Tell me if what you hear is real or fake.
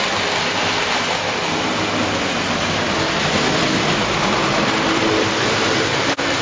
real